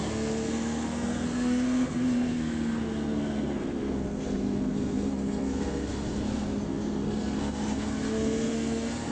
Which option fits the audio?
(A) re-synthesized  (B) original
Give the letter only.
A